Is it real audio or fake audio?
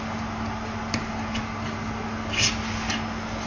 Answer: real